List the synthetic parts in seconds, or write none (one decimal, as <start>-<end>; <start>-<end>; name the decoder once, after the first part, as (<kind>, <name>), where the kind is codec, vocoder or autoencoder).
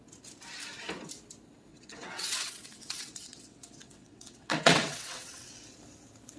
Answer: 1.7-5.5 (vocoder, WaveNeXt)